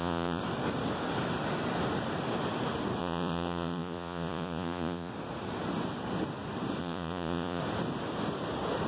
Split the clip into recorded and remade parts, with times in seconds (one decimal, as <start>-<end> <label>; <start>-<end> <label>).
0.0-0.4 remade; 0.4-3.0 recorded; 3.0-5.1 remade; 5.1-6.8 recorded; 6.8-7.6 remade; 7.6-8.9 recorded